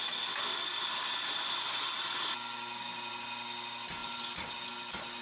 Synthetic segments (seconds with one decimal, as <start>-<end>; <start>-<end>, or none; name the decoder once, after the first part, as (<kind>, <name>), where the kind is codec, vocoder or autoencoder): none